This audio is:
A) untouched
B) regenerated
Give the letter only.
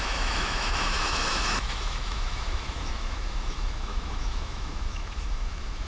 B